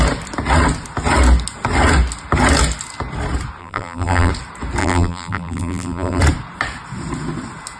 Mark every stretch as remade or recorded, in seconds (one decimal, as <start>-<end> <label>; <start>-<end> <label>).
0.0-3.6 recorded; 3.6-4.3 remade; 4.3-4.8 recorded; 4.8-6.2 remade; 6.2-7.8 recorded